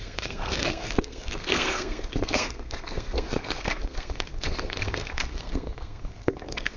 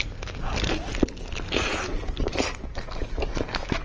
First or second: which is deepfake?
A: first